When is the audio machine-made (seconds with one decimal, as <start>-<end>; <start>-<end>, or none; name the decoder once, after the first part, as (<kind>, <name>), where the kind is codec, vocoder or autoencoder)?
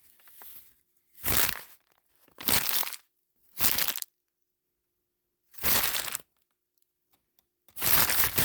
none